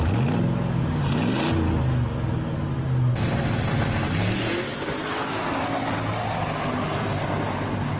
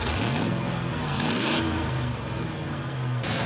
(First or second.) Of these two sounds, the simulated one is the second